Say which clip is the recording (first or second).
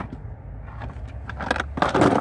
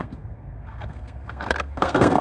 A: first